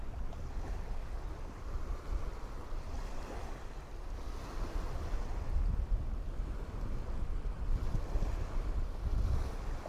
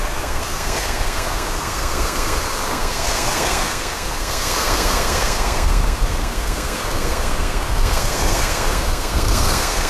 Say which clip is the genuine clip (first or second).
first